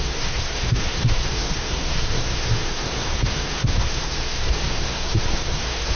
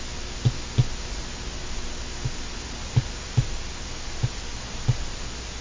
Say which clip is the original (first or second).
second